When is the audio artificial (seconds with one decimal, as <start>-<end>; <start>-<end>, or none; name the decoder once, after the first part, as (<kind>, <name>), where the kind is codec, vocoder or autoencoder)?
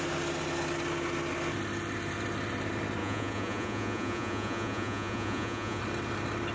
3.0-5.8 (vocoder, Vocos)